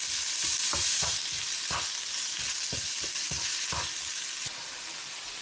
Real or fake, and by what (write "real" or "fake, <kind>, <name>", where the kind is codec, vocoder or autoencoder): real